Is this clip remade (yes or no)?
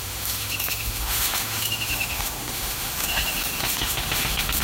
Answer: yes